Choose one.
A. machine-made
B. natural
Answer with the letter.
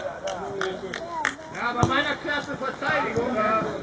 B